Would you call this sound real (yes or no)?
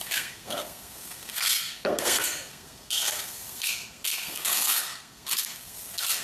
no